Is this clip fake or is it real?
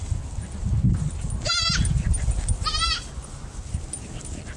real